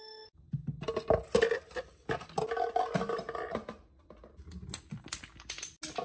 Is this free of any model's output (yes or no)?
yes